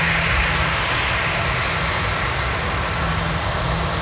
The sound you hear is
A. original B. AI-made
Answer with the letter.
A